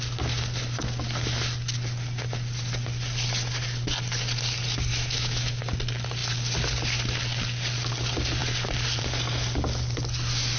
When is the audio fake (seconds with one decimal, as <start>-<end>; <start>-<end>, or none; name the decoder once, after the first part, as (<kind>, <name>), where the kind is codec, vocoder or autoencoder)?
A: 4.9-5.6 (autoencoder, DAC-VAE)